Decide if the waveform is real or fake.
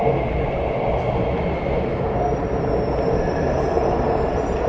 real